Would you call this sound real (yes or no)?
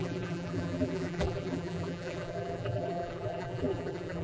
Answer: no